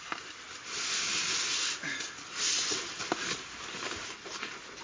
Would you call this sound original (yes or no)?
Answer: yes